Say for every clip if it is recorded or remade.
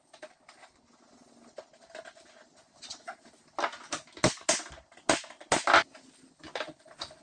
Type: recorded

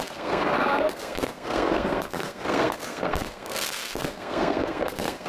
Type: remade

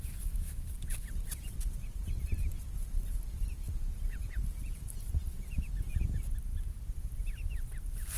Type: recorded